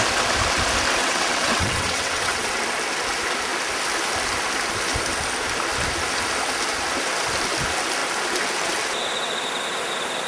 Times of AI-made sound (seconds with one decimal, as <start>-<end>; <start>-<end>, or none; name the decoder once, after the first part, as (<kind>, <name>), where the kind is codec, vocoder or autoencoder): 1.0-2.6 (vocoder, WaveNeXt)